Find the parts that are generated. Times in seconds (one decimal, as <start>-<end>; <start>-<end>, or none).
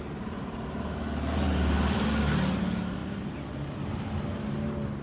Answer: none